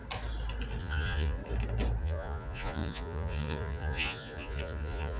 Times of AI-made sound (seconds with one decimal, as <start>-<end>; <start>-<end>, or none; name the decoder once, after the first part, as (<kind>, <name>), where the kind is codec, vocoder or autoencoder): 0.8-1.4 (vocoder, Vocos); 2.0-5.2